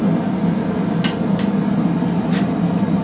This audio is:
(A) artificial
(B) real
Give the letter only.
B